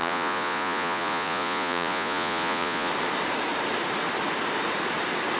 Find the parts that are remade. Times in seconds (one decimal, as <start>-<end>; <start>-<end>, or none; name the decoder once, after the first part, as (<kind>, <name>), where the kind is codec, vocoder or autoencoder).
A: 0.0-2.9 (vocoder, Vocos)